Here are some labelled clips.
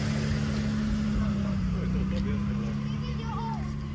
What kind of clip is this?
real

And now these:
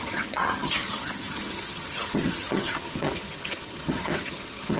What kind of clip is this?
fake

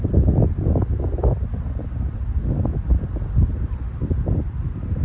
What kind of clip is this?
real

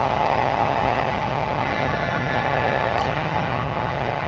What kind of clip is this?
fake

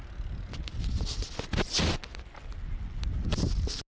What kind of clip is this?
real